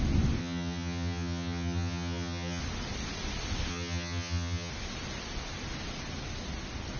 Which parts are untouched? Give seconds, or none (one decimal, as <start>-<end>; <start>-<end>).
0.0-0.4; 2.6-3.7; 4.7-7.0

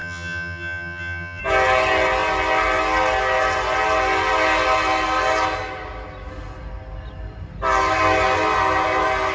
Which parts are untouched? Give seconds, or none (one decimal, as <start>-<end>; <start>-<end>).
1.4-9.3

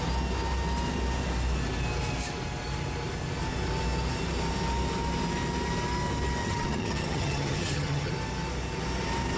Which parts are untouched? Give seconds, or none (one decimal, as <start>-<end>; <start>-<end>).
0.0-6.4; 8.1-9.4

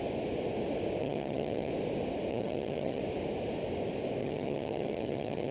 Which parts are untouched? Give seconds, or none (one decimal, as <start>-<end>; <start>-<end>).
0.0-1.0; 1.7-2.3; 3.0-4.2

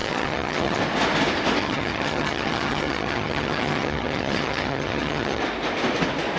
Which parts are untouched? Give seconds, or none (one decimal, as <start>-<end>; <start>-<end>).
0.8-1.6; 5.4-6.4

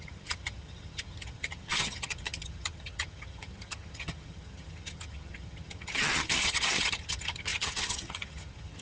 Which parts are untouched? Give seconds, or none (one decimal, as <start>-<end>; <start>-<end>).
none